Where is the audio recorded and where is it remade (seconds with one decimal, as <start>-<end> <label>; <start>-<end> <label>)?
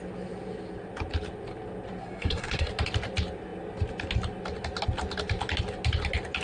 0.0-2.0 recorded; 2.0-2.7 remade; 2.7-6.4 recorded